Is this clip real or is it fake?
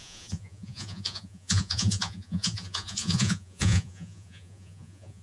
fake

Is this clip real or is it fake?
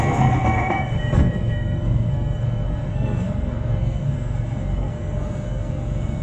fake